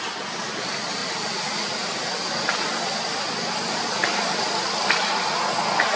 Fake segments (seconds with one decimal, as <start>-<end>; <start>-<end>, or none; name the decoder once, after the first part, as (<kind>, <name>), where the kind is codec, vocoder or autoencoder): 1.0-4.4 (vocoder, BigVGAN v2)